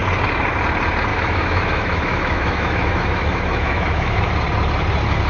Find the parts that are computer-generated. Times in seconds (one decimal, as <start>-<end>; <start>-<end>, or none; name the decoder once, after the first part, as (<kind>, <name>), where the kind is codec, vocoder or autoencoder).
1.1-4.3 (autoencoder, DAC-VAE)

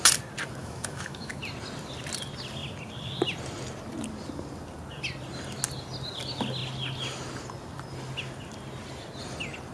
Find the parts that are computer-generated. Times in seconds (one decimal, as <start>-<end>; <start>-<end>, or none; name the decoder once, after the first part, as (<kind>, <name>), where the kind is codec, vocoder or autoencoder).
0.6-1.4 (autoencoder, DAC-VAE)